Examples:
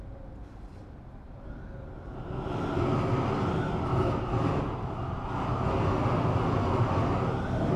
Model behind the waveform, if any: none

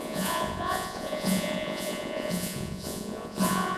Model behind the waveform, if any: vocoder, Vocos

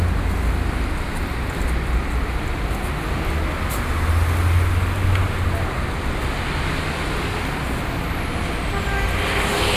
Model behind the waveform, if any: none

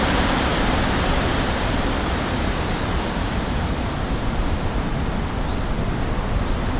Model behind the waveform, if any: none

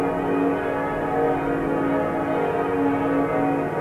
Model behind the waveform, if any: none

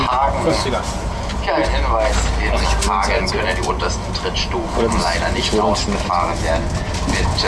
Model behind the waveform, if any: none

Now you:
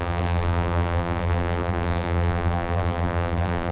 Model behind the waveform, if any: vocoder, BigVGAN v2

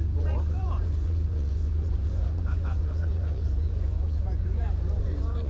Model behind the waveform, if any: vocoder, Vocos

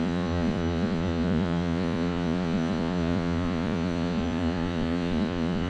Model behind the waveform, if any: vocoder, Vocos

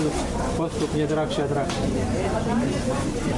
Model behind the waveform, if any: none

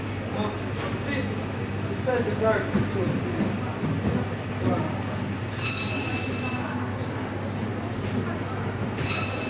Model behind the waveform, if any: none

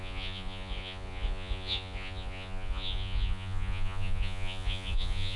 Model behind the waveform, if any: vocoder, Vocos